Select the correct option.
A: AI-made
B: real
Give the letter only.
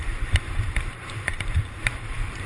A